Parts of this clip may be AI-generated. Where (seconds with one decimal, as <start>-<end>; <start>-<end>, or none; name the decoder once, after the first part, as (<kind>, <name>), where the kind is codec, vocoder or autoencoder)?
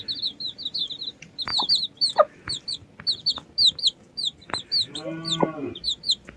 none